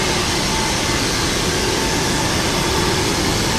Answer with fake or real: real